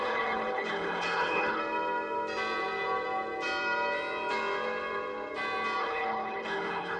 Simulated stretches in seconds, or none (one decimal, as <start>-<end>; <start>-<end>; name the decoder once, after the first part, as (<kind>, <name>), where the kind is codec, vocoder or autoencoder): 0.0-1.6 (codec, HILCodec); 5.8-7.0